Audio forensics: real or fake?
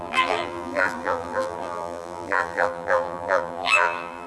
fake